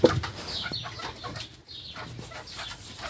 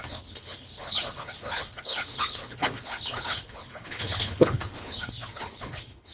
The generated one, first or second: second